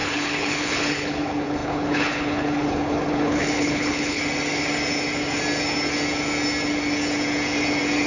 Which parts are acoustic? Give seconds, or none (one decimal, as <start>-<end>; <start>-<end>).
4.2-8.1